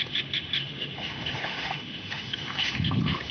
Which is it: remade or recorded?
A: remade